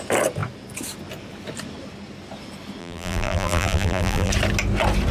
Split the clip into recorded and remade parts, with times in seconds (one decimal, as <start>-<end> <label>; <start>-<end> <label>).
0.0-2.8 recorded; 2.8-4.3 remade; 4.3-5.1 recorded